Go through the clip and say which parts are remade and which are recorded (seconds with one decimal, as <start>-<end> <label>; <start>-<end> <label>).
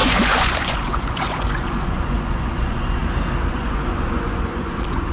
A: 0.0-3.0 remade; 3.0-3.5 recorded; 3.5-5.1 remade